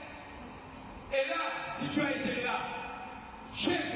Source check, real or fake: real